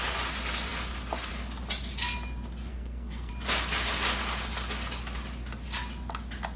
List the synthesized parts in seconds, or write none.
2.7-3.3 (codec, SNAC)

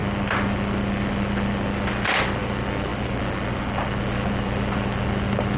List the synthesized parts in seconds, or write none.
none

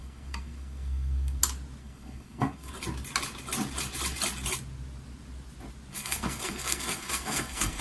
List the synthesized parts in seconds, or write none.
0.0-1.4 (codec, SNAC); 1.8-2.7; 5.9-7.8

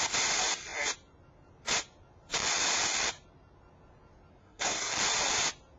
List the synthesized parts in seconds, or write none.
4.4-4.9 (codec, SNAC)

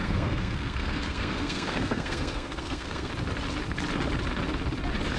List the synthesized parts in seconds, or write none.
0.0-3.1 (codec, SNAC)

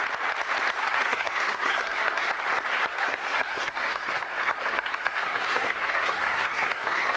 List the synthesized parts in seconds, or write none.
0.8-2.3 (codec, SNAC); 2.9-7.2

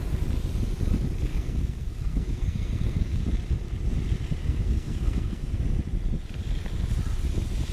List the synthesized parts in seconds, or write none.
1.3-3.2 (codec, SNAC); 4.4-5.6